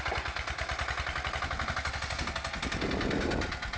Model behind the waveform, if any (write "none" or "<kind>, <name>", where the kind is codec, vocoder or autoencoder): none